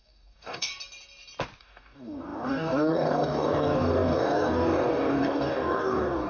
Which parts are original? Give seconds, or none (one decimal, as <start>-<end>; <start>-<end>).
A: 0.7-1.6